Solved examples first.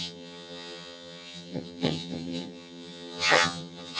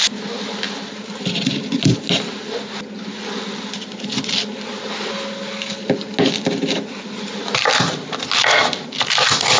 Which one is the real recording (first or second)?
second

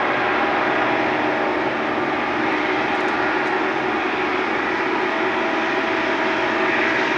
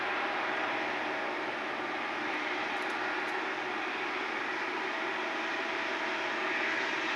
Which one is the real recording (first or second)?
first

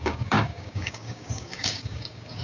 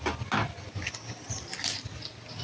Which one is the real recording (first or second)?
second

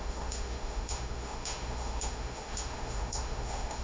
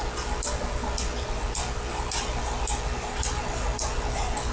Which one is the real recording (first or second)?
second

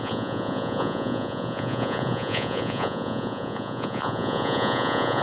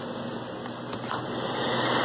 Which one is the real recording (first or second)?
second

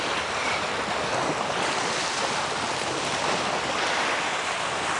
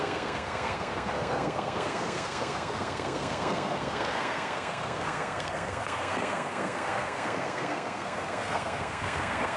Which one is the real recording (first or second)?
first